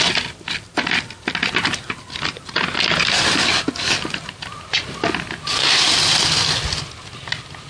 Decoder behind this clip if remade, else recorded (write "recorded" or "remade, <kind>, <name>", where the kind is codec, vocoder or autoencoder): recorded